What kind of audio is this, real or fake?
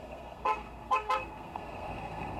fake